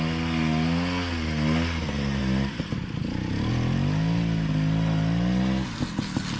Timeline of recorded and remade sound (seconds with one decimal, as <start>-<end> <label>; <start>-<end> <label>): 0.0-2.2 recorded; 2.2-3.5 remade; 3.5-6.4 recorded